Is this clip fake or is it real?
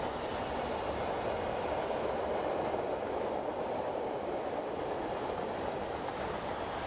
real